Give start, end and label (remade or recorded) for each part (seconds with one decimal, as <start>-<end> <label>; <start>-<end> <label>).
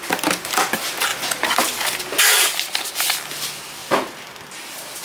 0.0-3.8 recorded; 3.8-5.0 remade